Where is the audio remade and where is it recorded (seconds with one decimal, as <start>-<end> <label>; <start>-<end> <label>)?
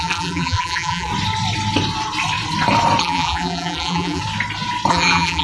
0.0-1.1 remade; 1.1-3.0 recorded; 3.0-4.2 remade; 4.2-4.9 recorded; 4.9-5.4 remade